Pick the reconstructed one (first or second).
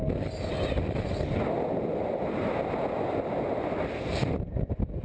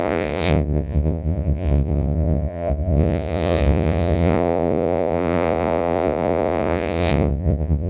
second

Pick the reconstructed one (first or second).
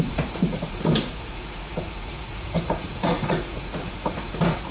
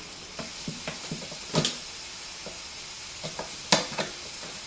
first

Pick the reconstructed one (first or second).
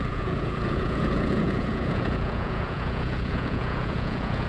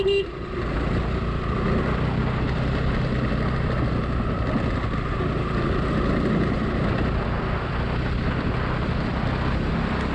first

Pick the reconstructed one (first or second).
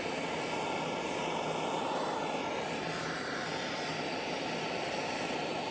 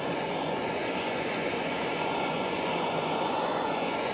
second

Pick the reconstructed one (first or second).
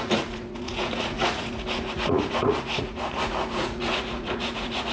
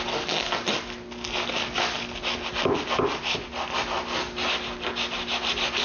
first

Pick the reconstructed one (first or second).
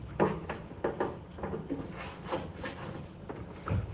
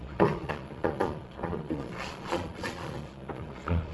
second